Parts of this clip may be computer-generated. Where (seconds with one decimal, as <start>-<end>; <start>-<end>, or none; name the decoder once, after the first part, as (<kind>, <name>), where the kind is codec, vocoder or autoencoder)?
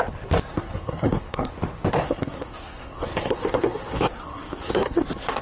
0.5-1.5 (codec, SNAC); 1.9-5.0